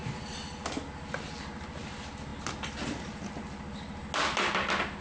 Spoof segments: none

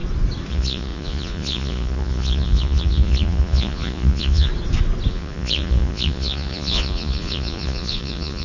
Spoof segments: 0.5-4.5 (vocoder, Vocos); 5.1-8.4

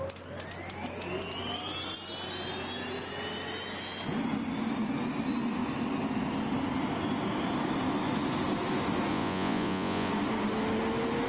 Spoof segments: 9.1-10.1 (vocoder, Vocos)

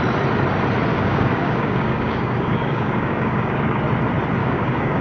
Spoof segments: 0.9-3.8 (codec, DAC); 4.4-5.0

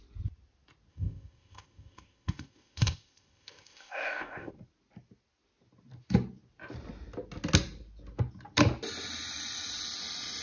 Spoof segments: 0.9-4.5 (codec, ZipCodec)

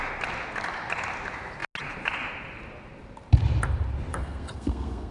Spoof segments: 4.1-5.1 (codec, SNAC)

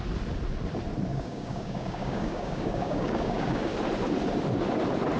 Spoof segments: 1.1-3.7 (codec, DAC)

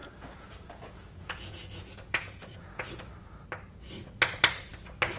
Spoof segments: 0.0-3.1 (vocoder, Vocos)